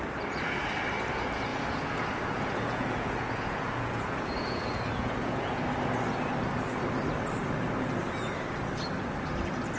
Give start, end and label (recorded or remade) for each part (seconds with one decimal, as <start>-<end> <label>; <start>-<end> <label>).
0.0-1.5 recorded; 1.5-5.6 remade; 5.6-9.8 recorded